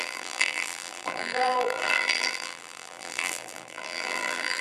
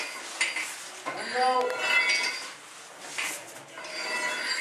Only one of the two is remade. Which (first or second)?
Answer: first